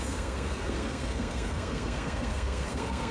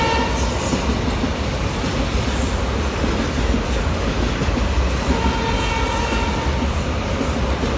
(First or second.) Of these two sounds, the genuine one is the second